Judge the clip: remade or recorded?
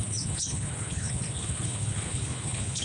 remade